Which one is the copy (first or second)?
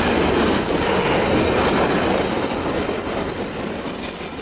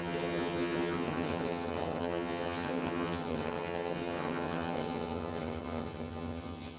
second